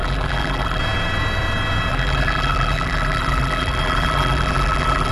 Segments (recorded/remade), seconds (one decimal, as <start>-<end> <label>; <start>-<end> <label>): 0.0-0.8 remade; 0.8-1.9 recorded; 1.9-5.1 remade